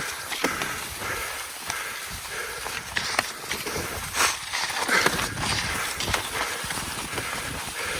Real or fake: real